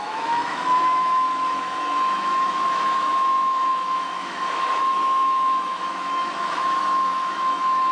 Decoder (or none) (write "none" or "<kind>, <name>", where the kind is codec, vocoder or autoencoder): autoencoder, DAC-VAE